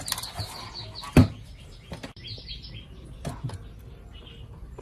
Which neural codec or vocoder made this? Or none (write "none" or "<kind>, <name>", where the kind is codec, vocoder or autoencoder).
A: none